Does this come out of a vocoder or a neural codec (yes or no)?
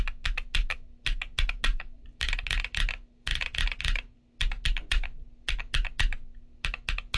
no